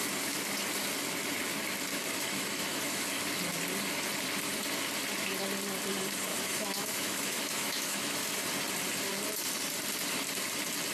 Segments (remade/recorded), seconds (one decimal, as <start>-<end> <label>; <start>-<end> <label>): 0.0-1.9 recorded; 1.9-3.2 remade; 3.2-6.3 recorded; 6.3-8.3 remade; 8.3-10.9 recorded